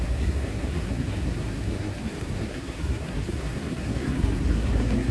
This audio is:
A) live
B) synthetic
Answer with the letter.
B